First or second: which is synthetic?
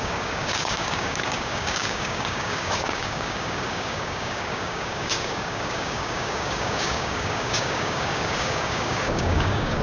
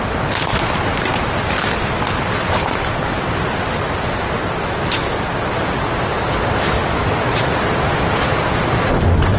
first